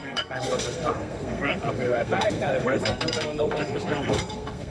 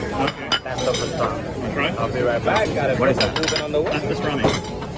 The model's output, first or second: first